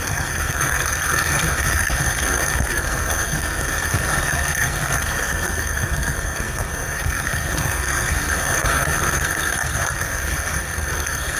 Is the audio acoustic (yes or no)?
no